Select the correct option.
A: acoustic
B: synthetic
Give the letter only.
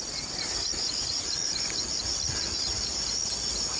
A